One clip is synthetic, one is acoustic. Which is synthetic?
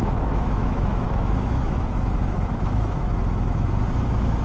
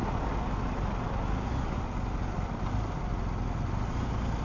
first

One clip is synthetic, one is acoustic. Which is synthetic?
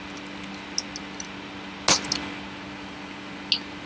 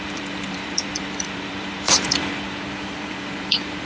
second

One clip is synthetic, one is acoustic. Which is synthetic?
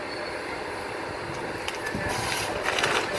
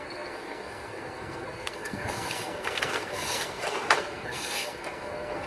second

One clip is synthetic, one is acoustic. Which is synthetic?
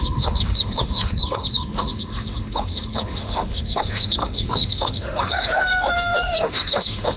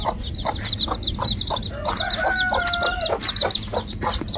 first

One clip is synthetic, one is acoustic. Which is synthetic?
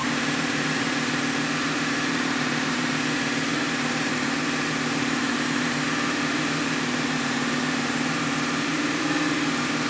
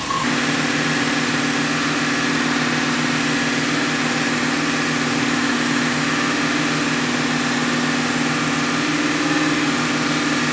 first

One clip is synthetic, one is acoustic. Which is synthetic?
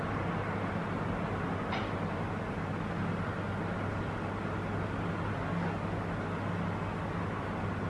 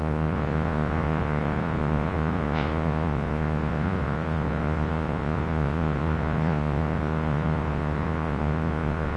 second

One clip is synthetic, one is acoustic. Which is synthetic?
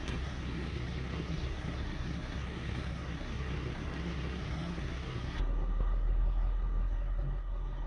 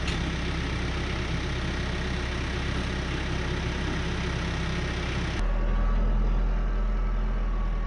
first